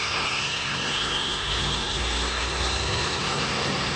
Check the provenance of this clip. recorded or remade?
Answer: remade